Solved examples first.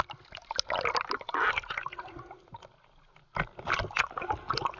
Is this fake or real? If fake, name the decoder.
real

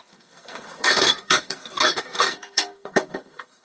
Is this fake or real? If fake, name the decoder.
fake, codec, SNAC